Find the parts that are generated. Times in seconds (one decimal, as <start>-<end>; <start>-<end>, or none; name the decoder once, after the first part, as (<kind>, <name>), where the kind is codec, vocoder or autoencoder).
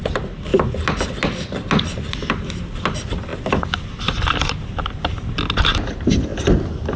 none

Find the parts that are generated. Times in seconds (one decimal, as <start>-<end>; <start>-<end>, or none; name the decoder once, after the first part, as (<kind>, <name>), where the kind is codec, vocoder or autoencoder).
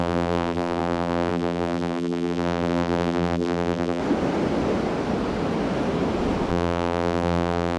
0.0-4.0 (vocoder, BigVGAN v2); 6.5-7.8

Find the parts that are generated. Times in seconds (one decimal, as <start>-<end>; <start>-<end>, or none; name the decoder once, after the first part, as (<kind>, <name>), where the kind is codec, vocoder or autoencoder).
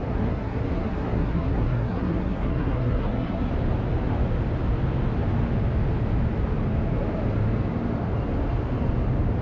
0.0-3.5 (codec, SNAC)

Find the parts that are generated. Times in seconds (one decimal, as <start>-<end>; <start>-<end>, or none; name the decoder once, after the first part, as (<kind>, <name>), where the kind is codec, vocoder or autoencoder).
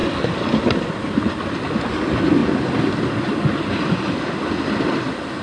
none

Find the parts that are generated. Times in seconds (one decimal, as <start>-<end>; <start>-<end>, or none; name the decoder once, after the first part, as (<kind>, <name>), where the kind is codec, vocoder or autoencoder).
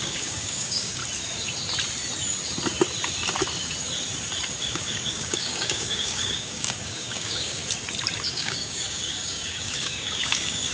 0.0-1.0 (codec, DAC); 4.6-7.6; 8.3-10.7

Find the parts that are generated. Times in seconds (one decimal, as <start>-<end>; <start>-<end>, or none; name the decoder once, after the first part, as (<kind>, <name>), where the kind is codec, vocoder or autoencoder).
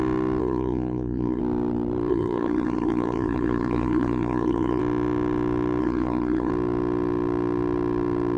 0.4-1.4 (codec, SNAC); 2.1-4.8; 5.8-6.5